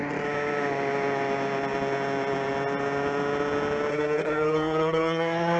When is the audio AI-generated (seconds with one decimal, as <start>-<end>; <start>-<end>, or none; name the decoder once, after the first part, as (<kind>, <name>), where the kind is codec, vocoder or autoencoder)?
3.9-5.6 (codec, SNAC)